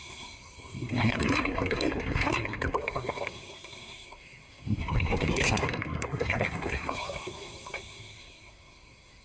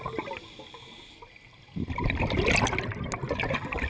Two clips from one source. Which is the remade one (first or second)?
first